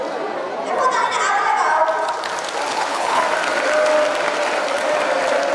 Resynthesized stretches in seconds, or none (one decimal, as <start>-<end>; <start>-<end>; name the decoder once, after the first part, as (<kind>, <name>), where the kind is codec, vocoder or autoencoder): 2.7-3.2 (codec, HILCodec)